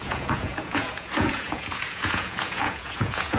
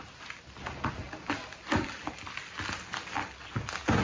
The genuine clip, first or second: second